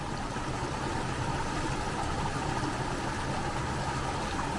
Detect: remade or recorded recorded